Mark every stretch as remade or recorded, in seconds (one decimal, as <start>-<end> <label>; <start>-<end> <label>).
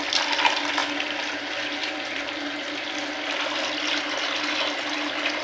0.0-5.4 recorded